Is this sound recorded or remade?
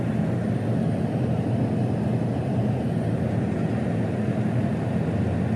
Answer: recorded